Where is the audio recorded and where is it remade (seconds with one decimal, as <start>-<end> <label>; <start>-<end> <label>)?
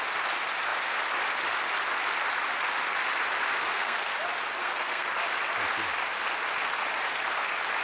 0.0-3.6 recorded; 3.6-4.1 remade; 4.1-4.6 recorded; 4.6-5.1 remade; 5.1-7.8 recorded